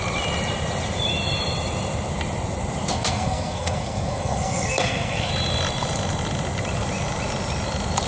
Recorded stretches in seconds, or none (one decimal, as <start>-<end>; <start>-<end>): 0.0-2.9; 5.3-8.1